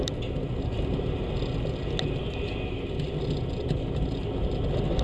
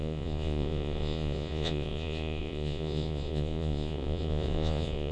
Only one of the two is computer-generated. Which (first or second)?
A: second